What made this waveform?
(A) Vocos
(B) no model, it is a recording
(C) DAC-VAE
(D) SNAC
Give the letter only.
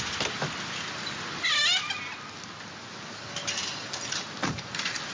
B